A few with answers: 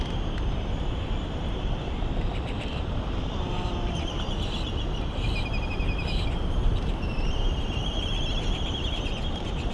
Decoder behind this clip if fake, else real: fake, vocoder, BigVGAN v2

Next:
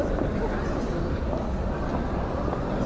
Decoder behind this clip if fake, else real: real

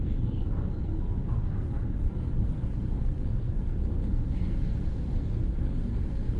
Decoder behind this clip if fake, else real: fake, codec, SNAC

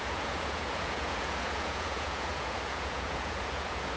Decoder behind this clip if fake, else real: fake, vocoder, Vocos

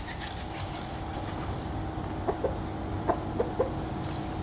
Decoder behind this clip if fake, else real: real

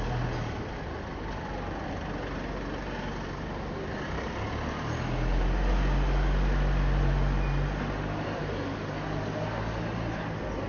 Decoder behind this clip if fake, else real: real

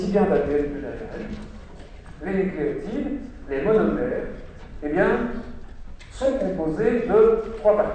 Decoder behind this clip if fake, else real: real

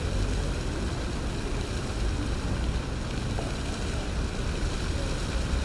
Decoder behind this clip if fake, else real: real